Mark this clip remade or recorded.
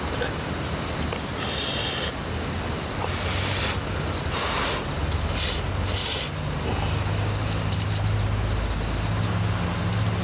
recorded